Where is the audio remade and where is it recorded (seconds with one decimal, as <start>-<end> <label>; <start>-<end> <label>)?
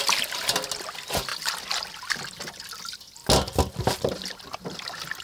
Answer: 0.0-5.2 recorded